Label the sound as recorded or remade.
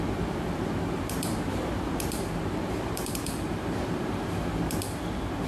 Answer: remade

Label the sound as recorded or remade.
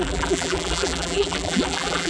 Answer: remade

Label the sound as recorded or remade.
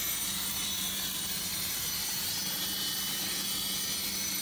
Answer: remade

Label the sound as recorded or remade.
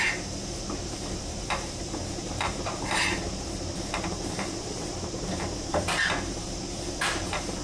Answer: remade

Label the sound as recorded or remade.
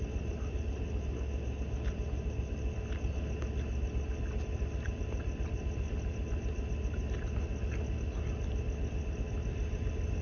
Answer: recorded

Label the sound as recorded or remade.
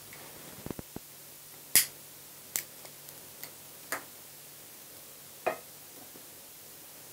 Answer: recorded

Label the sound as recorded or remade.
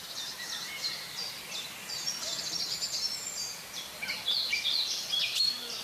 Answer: remade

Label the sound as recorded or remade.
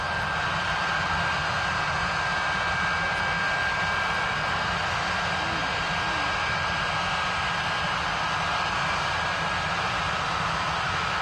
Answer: recorded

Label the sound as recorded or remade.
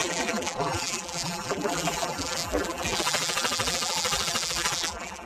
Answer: remade